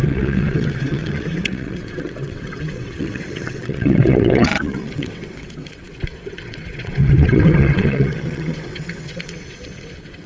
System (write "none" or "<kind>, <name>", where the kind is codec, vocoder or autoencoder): vocoder, WaveNeXt